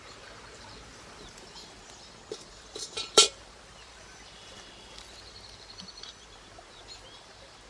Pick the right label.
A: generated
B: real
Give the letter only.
A